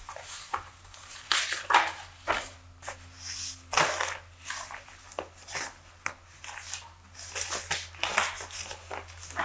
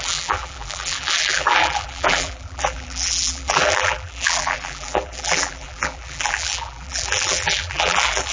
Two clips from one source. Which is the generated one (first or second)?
second